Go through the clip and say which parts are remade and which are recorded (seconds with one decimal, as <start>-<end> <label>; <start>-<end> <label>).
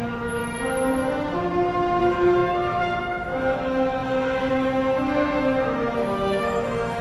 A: 0.0-0.4 remade; 0.4-2.0 recorded; 2.0-7.0 remade